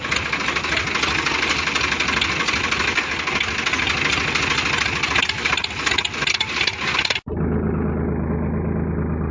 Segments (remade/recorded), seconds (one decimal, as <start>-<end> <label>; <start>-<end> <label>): 0.0-9.3 recorded